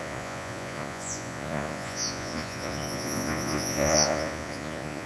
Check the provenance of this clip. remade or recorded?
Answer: remade